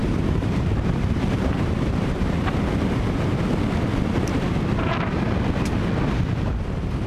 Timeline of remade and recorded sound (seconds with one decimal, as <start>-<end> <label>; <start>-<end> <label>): 0.0-2.3 remade; 2.3-7.1 recorded